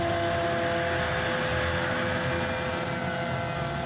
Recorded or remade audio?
recorded